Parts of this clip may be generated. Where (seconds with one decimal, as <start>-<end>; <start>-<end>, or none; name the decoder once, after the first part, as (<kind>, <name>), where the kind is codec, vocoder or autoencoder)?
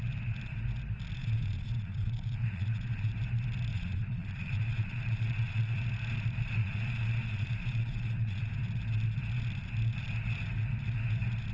1.2-3.1 (vocoder, Vocos); 3.7-5.8; 6.6-8.5